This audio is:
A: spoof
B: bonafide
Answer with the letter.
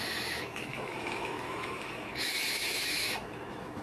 A